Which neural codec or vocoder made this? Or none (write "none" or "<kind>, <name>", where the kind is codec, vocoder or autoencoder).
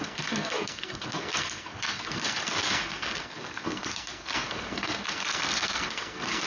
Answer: codec, SNAC